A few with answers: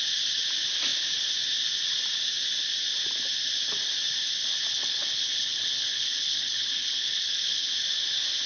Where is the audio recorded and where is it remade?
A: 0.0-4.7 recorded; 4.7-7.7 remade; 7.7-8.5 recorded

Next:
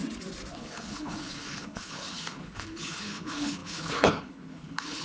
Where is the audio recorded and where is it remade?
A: 0.0-0.5 recorded; 0.5-5.0 remade

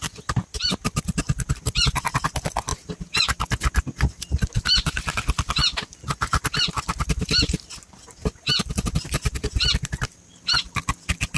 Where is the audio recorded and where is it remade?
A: 0.0-11.4 recorded

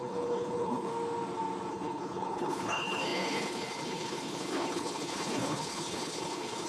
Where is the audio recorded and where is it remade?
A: 0.0-0.9 remade; 0.9-1.7 recorded; 1.7-6.7 remade

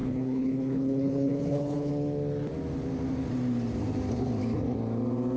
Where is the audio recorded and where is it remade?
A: 0.0-1.9 remade; 1.9-5.4 recorded

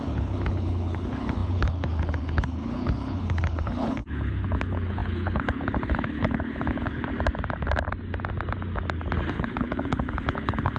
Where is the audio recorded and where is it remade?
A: 0.0-7.1 remade; 7.1-9.3 recorded; 9.3-10.8 remade

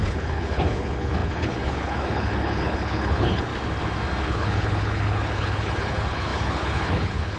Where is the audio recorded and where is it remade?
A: 0.0-3.5 remade; 3.5-4.2 recorded; 4.2-7.4 remade